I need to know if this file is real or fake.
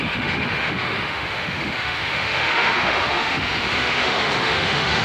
fake